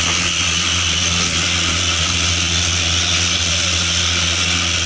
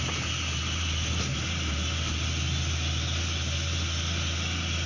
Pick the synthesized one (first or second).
first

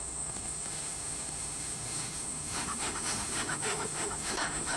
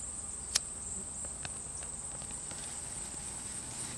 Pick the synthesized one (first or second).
first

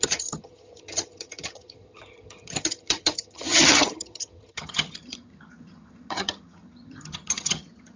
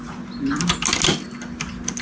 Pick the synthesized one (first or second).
first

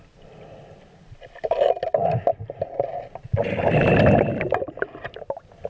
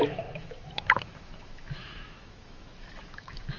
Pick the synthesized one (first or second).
second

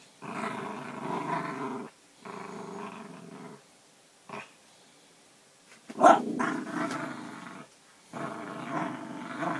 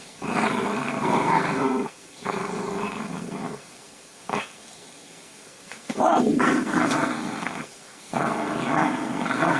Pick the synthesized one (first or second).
second